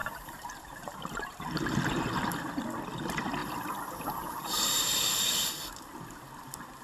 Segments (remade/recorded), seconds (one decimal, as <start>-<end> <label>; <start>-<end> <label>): 0.0-2.6 remade; 2.6-3.4 recorded; 3.4-5.0 remade; 5.0-6.8 recorded